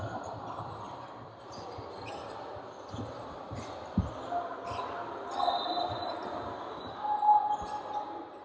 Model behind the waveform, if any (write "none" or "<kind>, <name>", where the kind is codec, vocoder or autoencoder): none